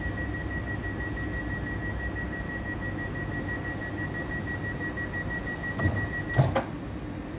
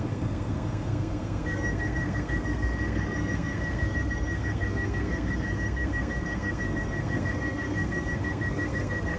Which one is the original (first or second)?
first